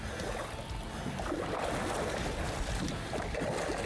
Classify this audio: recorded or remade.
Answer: recorded